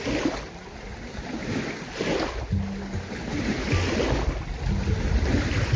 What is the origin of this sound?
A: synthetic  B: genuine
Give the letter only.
B